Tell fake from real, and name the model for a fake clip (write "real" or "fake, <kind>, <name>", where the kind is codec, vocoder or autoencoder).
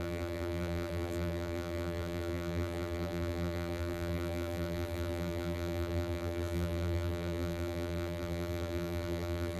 fake, vocoder, BigVGAN v2